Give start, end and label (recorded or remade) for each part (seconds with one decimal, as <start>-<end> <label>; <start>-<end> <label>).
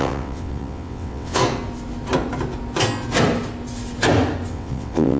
0.0-1.4 remade; 1.4-4.5 recorded; 4.5-5.2 remade